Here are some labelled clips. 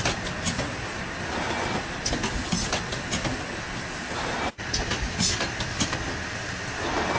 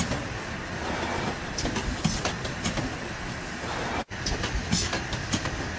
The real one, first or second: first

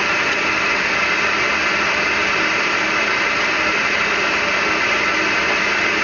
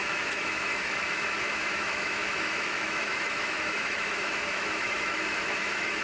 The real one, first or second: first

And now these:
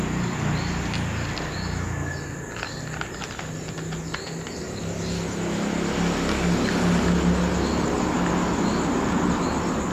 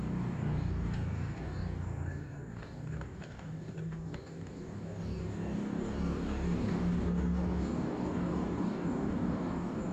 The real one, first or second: first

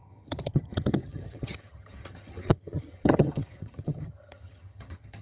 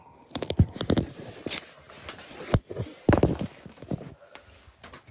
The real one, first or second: second